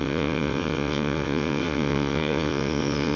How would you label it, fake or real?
fake